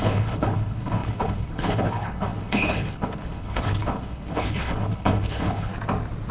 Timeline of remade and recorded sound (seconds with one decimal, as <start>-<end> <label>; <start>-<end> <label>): 0.0-5.7 remade; 5.7-6.3 recorded